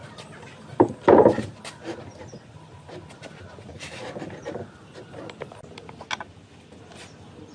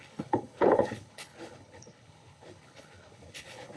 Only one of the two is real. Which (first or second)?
first